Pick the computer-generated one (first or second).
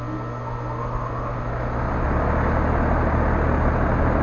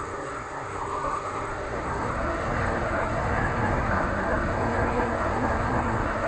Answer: second